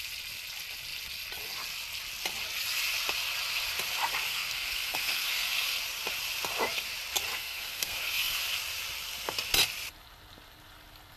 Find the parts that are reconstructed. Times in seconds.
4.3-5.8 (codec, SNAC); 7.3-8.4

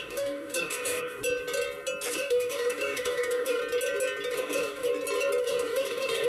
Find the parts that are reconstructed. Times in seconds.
0.0-1.2 (codec, DAC); 2.1-3.6; 4.3-4.9; 5.4-6.3

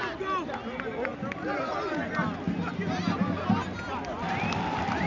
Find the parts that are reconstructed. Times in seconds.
none

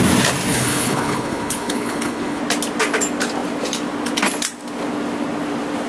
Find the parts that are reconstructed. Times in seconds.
0.5-2.4 (codec, HILCodec)

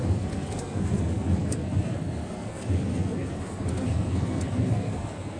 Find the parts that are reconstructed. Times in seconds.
0.0-5.4 (codec, SNAC)